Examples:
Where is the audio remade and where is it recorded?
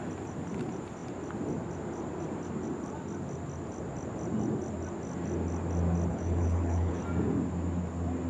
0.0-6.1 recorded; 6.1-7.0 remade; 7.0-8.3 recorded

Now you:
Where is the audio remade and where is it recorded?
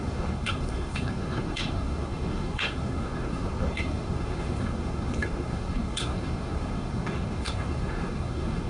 0.0-8.7 remade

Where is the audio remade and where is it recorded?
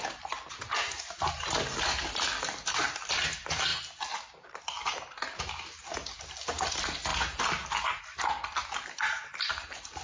0.0-10.0 recorded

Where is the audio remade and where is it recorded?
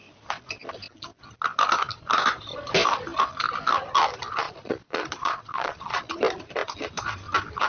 0.0-4.4 recorded; 4.4-6.1 remade; 6.1-7.7 recorded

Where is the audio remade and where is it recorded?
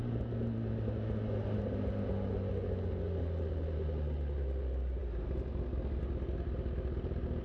0.0-7.4 recorded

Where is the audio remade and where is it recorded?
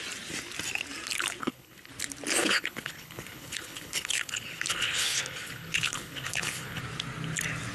0.0-1.4 recorded; 1.4-1.9 remade; 1.9-2.4 recorded; 2.4-6.8 remade; 6.8-7.7 recorded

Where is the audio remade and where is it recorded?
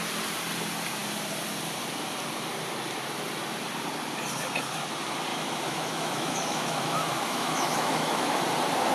0.0-5.3 recorded; 5.3-8.4 remade; 8.4-8.9 recorded